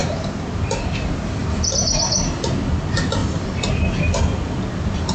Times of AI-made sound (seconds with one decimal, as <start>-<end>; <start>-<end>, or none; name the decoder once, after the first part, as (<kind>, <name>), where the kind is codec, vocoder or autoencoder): 0.0-0.6 (vocoder, BigVGAN v2); 1.4-2.0; 3.2-3.7